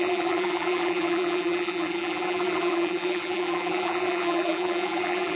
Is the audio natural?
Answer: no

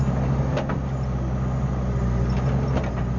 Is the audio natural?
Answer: yes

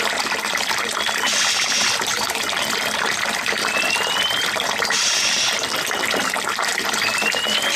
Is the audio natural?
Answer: yes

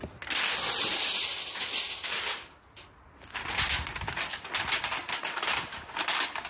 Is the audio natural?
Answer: yes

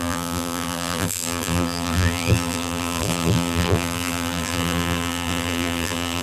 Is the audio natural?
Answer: no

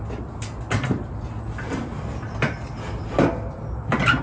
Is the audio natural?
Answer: yes